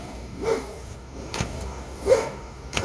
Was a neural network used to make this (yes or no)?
yes